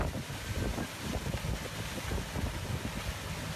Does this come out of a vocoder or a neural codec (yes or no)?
no